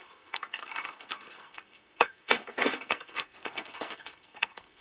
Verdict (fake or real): fake